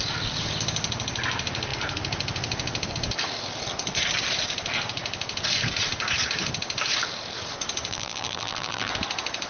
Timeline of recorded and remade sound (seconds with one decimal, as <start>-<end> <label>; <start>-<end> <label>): 0.0-7.9 recorded; 7.9-8.9 remade; 8.9-9.5 recorded